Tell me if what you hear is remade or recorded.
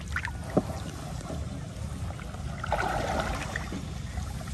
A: recorded